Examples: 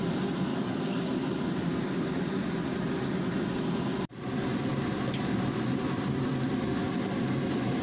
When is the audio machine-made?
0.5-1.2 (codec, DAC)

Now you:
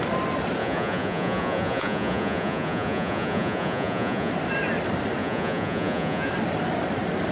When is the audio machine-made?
0.6-4.3 (vocoder, Vocos); 5.2-6.3

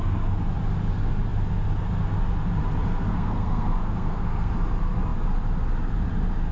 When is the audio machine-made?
3.1-4.5 (codec, SNAC)

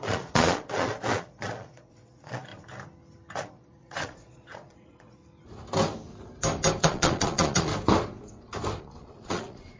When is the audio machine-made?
0.0-2.5 (vocoder, Vocos); 3.4-5.2; 6.8-7.7; 8.8-9.8

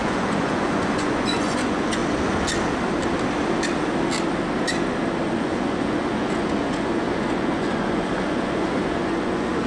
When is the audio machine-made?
0.0-2.0 (vocoder, Vocos); 5.3-9.7

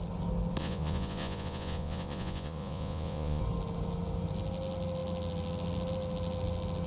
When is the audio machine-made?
0.6-3.4 (vocoder, Vocos)

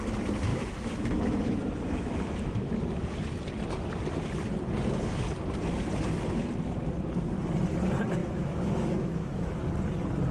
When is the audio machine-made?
0.5-2.8 (autoencoder, DAC-VAE); 8.2-9.6

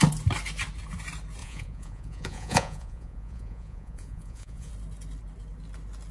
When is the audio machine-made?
1.4-4.7 (vocoder, Vocos)